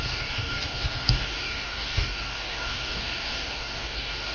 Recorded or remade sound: remade